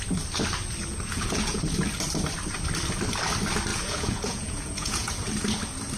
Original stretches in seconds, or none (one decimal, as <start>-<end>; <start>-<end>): 0.0-0.9; 1.6-3.7; 5.1-6.0